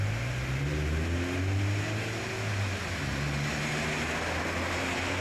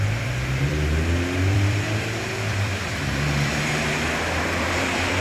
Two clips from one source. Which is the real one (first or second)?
first